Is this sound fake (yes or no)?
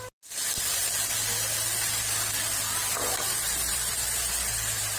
no